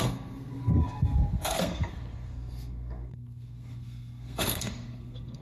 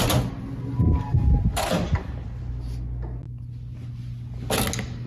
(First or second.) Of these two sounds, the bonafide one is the second